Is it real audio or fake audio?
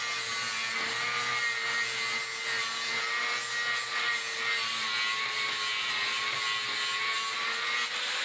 real